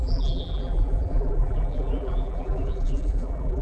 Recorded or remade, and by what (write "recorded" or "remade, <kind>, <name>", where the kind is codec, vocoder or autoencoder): remade, vocoder, BigVGAN v2